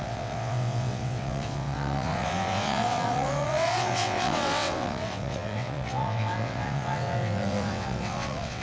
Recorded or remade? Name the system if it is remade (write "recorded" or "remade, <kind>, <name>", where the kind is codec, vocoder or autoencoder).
remade, vocoder, WaveNeXt